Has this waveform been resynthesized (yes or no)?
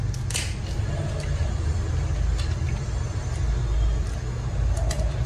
no